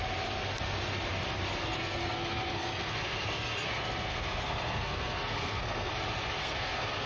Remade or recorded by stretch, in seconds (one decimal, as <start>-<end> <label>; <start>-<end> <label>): 0.0-1.6 recorded; 1.6-5.9 remade; 5.9-6.4 recorded; 6.4-7.1 remade